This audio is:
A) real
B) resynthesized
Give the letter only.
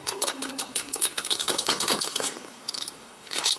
B